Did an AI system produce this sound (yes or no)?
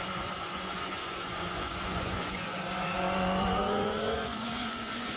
yes